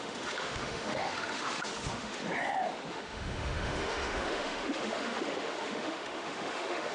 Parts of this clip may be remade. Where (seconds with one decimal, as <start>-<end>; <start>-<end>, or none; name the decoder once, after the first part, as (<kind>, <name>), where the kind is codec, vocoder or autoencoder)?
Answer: 0.0-2.2 (autoencoder, DAC-VAE); 2.9-6.9